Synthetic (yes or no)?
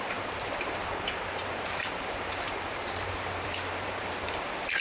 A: yes